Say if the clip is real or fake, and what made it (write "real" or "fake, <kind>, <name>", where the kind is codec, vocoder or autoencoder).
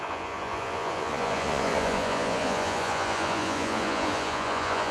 fake, vocoder, Vocos